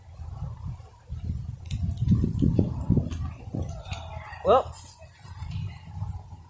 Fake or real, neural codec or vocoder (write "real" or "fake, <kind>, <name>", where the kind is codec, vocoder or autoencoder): real